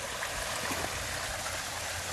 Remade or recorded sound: recorded